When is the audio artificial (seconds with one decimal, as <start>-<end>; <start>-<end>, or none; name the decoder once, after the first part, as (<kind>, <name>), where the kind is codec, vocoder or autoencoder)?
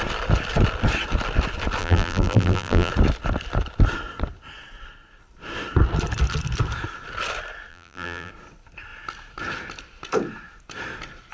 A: 1.8-2.9 (vocoder, BigVGAN v2); 7.7-8.3